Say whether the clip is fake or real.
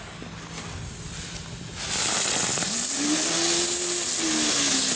real